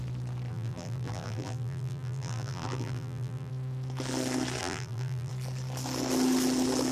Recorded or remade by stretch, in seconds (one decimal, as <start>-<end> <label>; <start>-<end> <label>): 0.0-0.5 recorded; 0.5-3.5 remade; 3.5-4.6 recorded; 4.6-5.3 remade; 5.3-6.9 recorded